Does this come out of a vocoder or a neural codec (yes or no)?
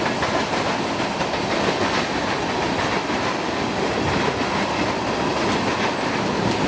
no